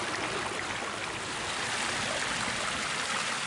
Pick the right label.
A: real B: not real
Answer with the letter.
A